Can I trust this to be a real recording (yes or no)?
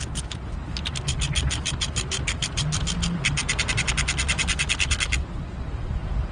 yes